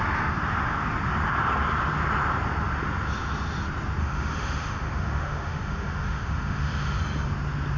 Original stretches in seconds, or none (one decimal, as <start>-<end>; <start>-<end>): 0.0-4.0; 7.0-7.8